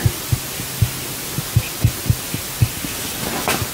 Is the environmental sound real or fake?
real